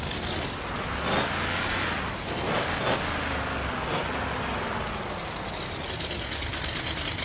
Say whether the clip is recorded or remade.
recorded